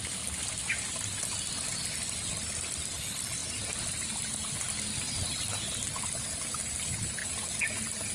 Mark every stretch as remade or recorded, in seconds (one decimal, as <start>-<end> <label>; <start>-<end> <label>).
0.0-8.1 recorded